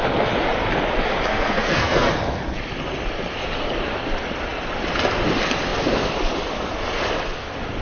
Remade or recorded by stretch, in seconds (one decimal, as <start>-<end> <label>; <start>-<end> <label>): 0.0-1.3 recorded; 1.3-2.1 remade; 2.1-7.8 recorded